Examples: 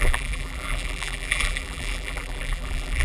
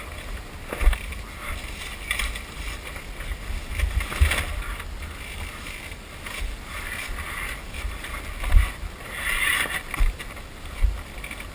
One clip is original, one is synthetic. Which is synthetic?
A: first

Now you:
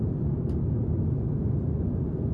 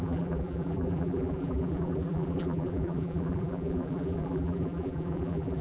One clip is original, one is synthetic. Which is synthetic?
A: second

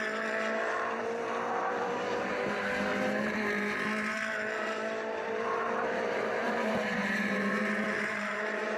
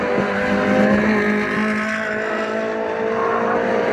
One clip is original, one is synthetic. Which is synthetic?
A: first